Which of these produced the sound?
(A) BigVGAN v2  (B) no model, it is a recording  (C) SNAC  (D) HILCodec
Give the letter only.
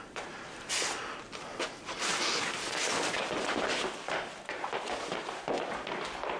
B